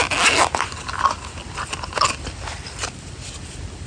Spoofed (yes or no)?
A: no